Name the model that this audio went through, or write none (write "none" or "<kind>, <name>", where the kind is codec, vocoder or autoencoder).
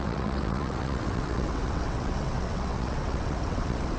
vocoder, WaveNeXt